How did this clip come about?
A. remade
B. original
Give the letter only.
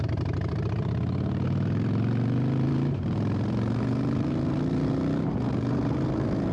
A